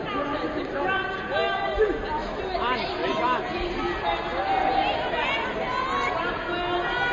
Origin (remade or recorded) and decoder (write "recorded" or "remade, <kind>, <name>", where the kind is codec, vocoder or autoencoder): recorded